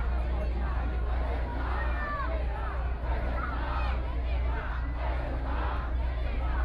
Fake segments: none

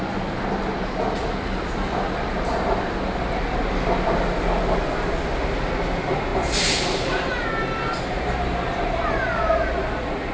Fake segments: none

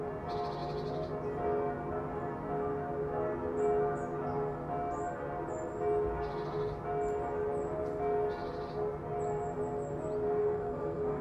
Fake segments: 10.4-11.2

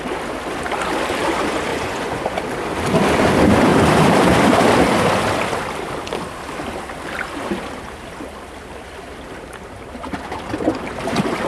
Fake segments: 1.7-2.4